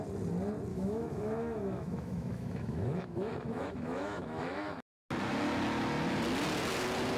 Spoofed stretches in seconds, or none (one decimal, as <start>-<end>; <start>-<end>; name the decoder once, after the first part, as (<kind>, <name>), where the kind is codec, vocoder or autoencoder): 0.7-5.0 (autoencoder, DAC-VAE)